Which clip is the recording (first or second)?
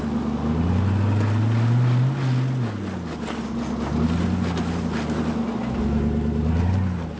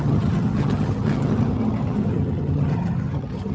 first